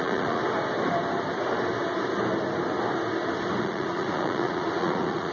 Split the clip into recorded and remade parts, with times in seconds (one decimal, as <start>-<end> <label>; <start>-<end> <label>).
0.0-0.4 remade; 0.4-3.6 recorded; 3.6-5.3 remade

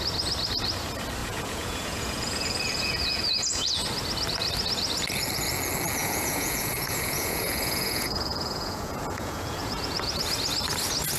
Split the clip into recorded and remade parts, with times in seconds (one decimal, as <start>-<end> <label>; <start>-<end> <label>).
0.0-1.2 recorded; 1.2-3.8 remade; 3.8-6.0 recorded; 6.0-10.2 remade; 10.2-11.2 recorded

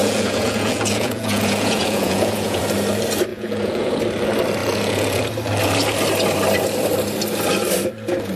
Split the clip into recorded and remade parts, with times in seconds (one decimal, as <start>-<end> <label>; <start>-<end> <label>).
0.0-2.6 remade; 2.6-3.3 recorded; 3.3-4.0 remade; 4.0-4.6 recorded; 4.6-5.2 remade; 5.2-8.4 recorded

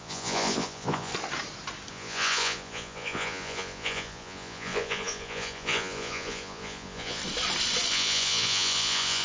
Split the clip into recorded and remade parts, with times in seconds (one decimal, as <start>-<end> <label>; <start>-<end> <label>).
0.0-1.1 remade; 1.1-1.9 recorded; 1.9-7.2 remade; 7.2-7.9 recorded; 7.9-9.2 remade